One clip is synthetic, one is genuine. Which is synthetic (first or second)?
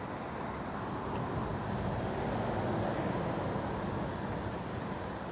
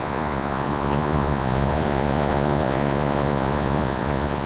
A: second